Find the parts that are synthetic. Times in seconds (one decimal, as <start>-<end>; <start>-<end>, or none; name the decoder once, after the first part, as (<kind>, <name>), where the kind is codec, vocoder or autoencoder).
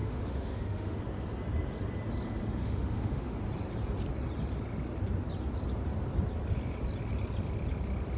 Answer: 0.0-1.0 (autoencoder, DAC-VAE); 2.6-3.4